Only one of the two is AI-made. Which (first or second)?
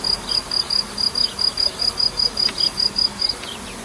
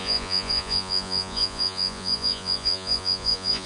second